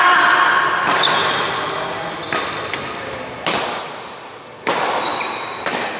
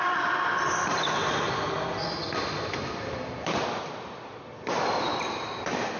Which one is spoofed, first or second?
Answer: second